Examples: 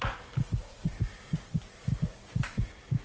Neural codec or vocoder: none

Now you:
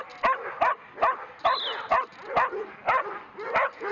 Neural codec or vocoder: none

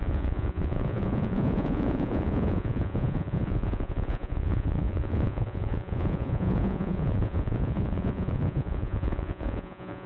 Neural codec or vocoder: vocoder, Vocos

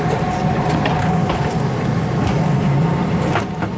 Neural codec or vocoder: none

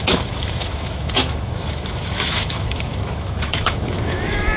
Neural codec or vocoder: autoencoder, DAC-VAE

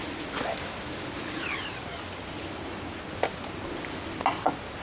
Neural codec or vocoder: none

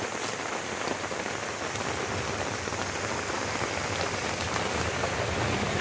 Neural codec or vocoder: none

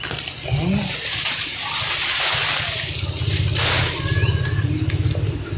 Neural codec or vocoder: none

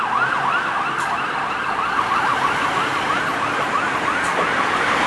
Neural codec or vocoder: none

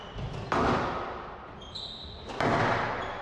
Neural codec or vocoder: none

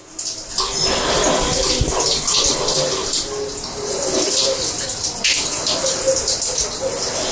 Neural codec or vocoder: none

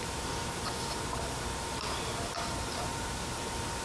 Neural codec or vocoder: vocoder, BigVGAN v2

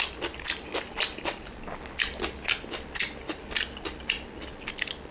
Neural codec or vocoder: none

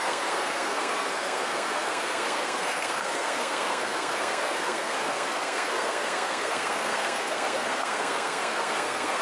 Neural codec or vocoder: codec, SNAC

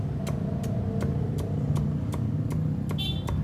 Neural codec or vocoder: none